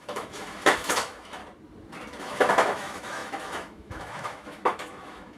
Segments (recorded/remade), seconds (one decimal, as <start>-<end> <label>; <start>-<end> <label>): 0.0-1.4 remade; 1.4-2.2 recorded; 2.2-5.4 remade